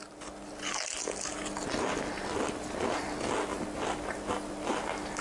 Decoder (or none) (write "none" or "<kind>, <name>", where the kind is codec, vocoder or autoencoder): none